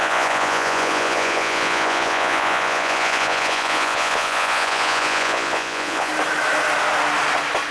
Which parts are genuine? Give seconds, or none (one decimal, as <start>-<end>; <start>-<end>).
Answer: 6.1-7.7